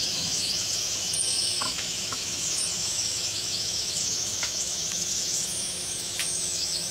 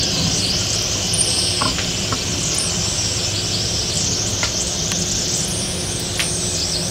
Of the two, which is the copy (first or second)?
first